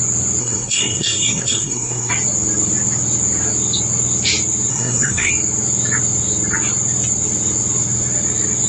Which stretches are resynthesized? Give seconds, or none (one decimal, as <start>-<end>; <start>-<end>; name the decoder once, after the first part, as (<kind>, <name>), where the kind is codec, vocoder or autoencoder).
0.4-2.1 (codec, SNAC); 4.7-5.3